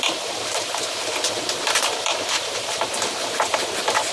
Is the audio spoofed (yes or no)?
yes